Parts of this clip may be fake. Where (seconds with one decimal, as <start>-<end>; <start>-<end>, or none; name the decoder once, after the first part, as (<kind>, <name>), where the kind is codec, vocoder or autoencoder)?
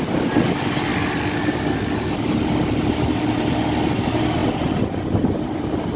none